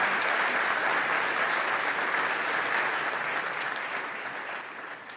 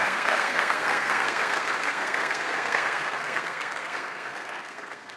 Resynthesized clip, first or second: second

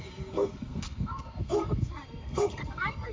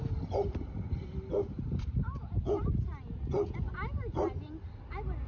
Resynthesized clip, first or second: first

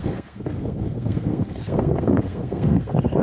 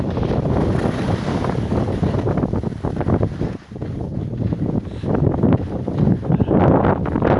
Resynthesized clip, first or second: first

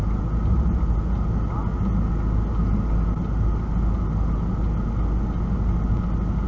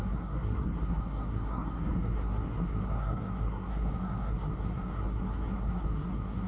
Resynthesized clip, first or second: second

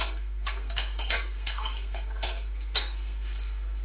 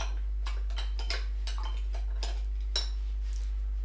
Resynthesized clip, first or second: first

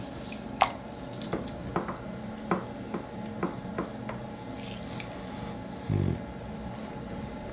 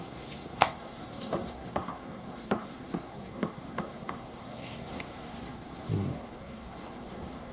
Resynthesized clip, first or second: second